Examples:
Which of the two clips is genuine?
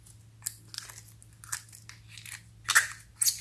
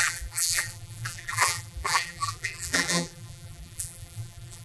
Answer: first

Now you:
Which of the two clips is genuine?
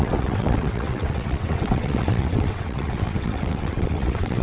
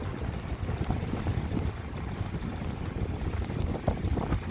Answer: second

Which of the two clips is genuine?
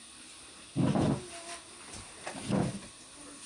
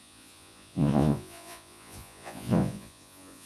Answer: first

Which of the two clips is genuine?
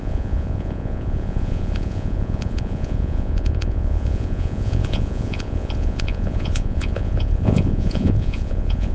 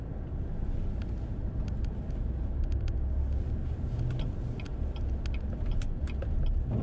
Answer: second